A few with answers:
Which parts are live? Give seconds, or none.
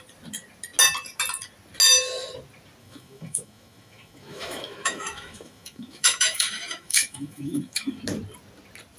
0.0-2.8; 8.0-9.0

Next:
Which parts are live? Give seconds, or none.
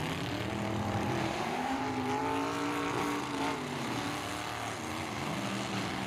0.0-1.2; 1.8-6.1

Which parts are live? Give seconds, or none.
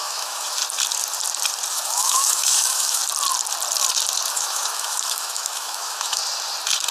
0.6-1.7; 3.0-4.3; 6.2-6.9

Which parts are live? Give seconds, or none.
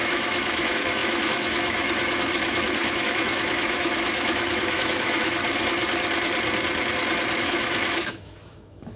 5.4-7.4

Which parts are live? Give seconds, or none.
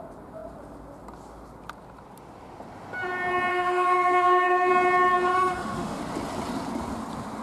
0.0-3.5; 4.7-5.3; 6.0-7.4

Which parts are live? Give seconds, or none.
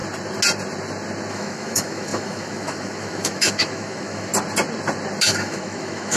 0.0-1.3; 4.3-5.2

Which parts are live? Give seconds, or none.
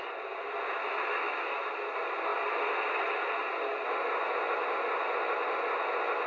0.0-0.8; 1.7-6.3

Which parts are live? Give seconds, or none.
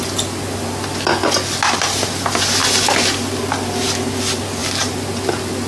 0.0-5.7